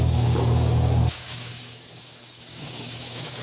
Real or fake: fake